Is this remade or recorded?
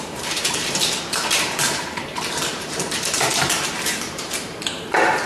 remade